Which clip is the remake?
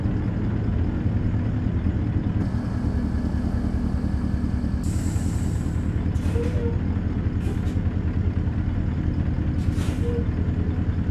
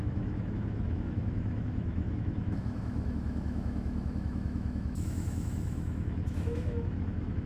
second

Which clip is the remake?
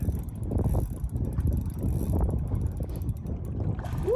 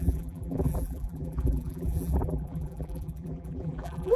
second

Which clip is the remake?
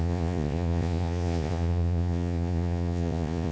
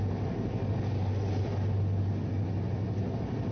first